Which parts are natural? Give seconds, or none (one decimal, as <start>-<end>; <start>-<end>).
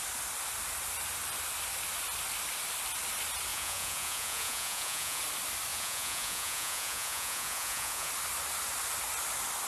0.0-3.5; 5.2-5.7; 8.1-9.7